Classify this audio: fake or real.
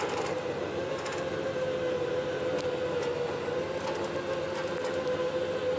real